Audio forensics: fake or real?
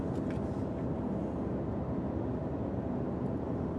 real